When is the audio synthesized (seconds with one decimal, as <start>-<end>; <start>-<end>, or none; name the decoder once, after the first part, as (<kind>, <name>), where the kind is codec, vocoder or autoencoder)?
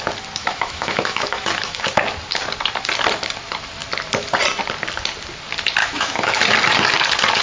0.4-1.9 (autoencoder, DAC-VAE); 5.8-6.4